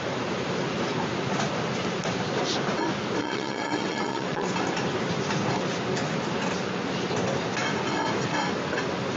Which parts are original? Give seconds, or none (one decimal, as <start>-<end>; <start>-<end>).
0.0-3.2; 4.5-9.2